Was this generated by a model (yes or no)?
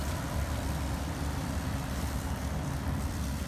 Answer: yes